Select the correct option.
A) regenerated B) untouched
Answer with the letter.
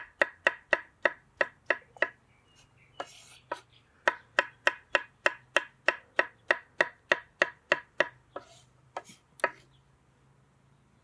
B